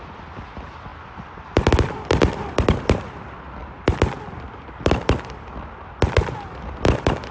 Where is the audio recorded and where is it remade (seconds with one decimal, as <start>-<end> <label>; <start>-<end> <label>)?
0.0-0.9 recorded; 0.9-2.5 remade; 2.5-7.3 recorded